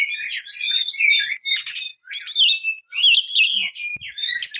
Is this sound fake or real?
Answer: real